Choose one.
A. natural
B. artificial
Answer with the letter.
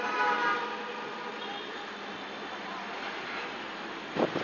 A